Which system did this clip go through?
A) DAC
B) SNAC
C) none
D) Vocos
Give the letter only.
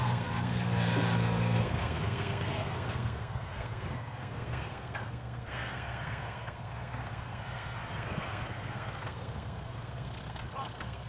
B